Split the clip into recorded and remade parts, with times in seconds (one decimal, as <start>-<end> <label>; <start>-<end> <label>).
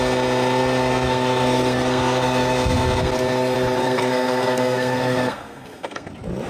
0.0-0.9 recorded; 0.9-3.1 remade; 3.1-3.8 recorded; 3.8-6.1 remade; 6.1-6.5 recorded